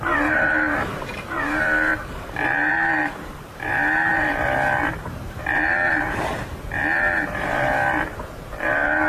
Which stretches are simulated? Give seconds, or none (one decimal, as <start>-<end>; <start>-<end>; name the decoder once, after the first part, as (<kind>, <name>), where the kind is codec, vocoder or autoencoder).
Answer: 0.0-9.1 (vocoder, BigVGAN v2)